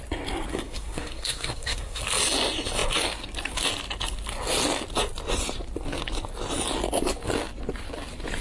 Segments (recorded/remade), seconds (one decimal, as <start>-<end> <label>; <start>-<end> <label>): 0.0-0.5 recorded; 0.5-2.0 remade; 2.0-8.4 recorded